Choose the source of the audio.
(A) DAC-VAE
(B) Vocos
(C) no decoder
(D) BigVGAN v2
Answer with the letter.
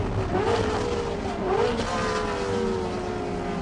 C